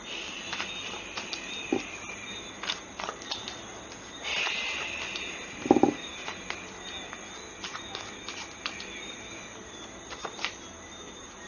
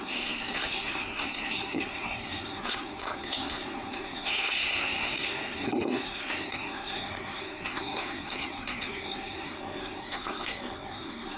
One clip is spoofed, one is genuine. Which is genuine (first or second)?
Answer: first